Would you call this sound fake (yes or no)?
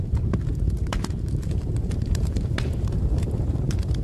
yes